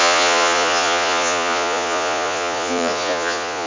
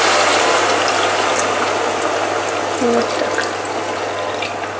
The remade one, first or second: first